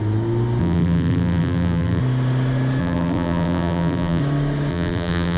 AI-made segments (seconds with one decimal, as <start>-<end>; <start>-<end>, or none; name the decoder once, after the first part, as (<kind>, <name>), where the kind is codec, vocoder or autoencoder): 0.6-2.0 (vocoder, BigVGAN v2); 2.8-4.2; 4.7-5.4